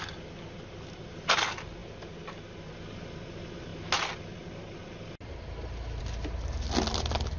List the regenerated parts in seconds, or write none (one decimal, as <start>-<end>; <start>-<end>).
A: none